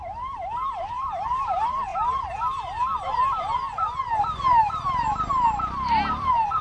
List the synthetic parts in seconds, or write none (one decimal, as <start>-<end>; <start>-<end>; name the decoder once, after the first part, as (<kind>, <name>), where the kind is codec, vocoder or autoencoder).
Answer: 0.0-1.9 (vocoder, BigVGAN v2); 5.3-6.6